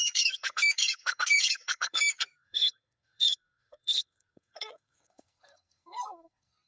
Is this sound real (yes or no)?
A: no